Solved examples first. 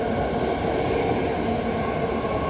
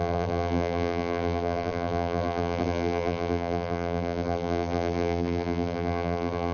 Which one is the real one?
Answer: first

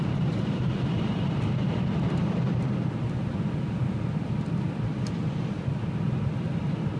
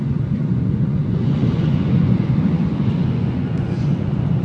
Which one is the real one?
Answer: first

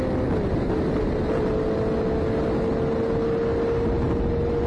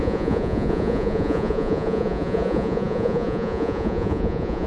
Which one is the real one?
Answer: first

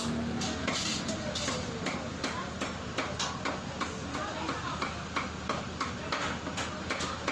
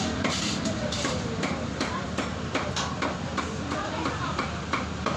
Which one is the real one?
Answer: first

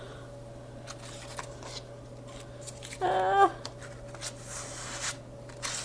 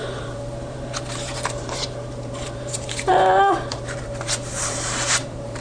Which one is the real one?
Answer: first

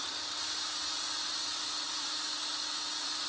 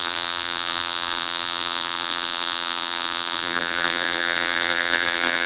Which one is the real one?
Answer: first